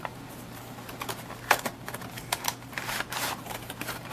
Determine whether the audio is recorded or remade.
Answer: remade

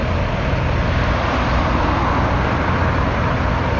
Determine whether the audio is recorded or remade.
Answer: recorded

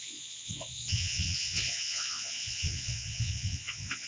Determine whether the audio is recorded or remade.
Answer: remade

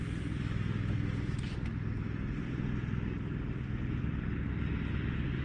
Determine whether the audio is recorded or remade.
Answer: recorded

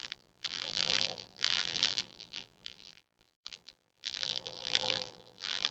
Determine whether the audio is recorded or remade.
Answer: remade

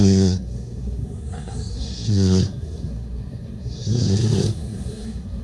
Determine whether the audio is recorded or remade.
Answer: remade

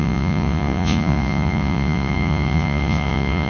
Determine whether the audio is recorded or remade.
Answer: remade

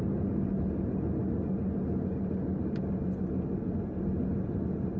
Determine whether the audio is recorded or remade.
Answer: recorded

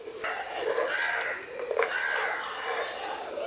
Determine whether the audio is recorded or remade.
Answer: recorded